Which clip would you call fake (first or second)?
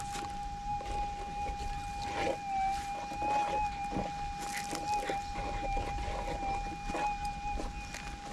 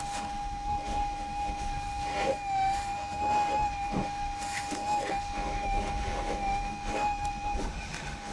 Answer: second